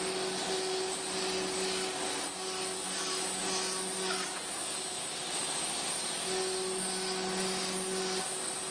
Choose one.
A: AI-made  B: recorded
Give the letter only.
B